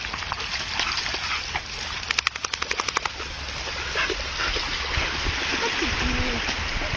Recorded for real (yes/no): yes